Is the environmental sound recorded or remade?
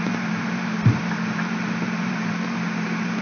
remade